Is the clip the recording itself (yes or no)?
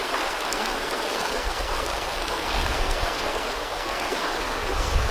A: no